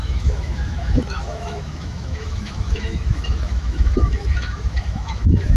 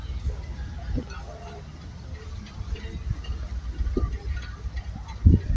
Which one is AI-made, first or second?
first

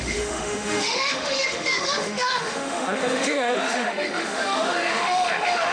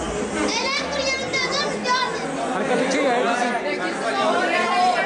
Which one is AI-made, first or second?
first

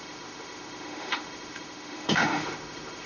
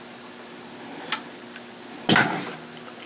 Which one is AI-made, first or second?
first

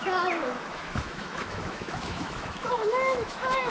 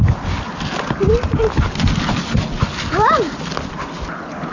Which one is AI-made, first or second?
first